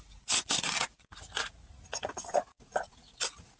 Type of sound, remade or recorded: remade